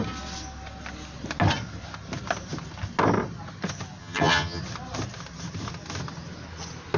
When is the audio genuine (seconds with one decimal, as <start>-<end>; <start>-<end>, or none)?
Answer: 0.0-4.0; 4.6-7.0